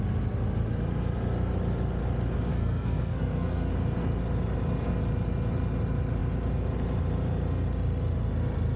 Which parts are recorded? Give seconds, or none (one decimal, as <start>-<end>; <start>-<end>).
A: 0.0-2.5; 3.7-8.8